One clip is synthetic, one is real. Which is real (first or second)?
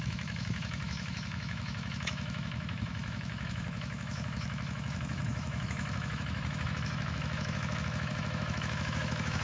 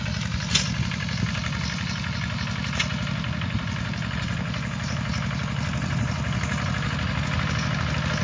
second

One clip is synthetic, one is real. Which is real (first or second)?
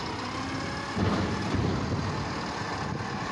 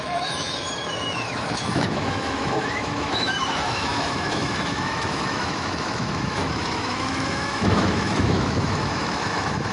first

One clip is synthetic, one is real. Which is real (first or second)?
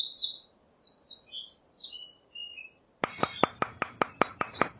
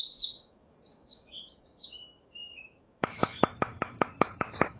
first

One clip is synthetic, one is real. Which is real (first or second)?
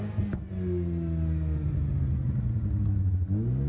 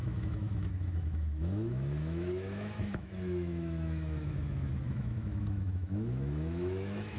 first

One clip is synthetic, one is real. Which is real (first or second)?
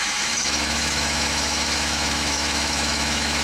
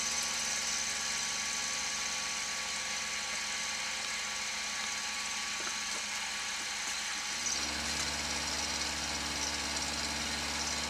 second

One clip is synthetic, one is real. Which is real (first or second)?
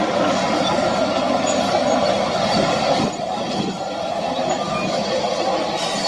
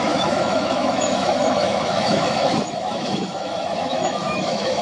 first